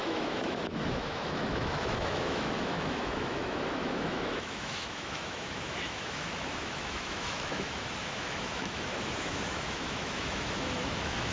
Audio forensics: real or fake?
fake